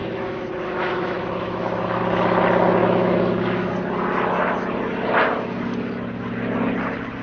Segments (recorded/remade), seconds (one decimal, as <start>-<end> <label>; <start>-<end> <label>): 0.0-2.0 remade; 2.0-2.8 recorded; 2.8-3.7 remade; 3.7-7.2 recorded